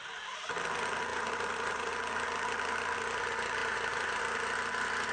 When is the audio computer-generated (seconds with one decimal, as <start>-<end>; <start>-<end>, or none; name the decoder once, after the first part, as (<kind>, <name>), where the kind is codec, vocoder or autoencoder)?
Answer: 1.1-1.9 (vocoder, BigVGAN v2); 3.6-4.2